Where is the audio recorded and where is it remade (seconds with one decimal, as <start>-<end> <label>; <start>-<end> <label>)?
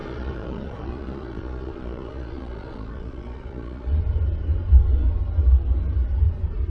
0.0-4.0 remade; 4.0-6.7 recorded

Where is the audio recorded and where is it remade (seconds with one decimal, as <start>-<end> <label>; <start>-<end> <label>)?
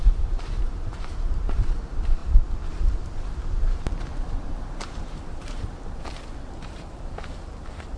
0.0-8.0 remade